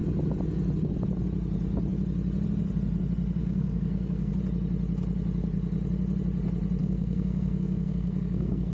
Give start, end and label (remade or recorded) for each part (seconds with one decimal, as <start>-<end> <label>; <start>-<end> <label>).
0.0-3.4 recorded; 3.4-4.3 remade; 4.3-6.8 recorded; 6.8-8.7 remade